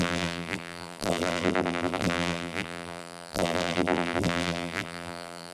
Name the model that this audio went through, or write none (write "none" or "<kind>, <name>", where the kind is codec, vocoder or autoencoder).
vocoder, BigVGAN v2